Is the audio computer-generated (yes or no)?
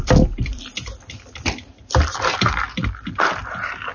no